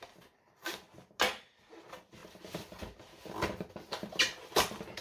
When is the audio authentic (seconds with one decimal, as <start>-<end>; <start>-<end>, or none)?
0.0-5.0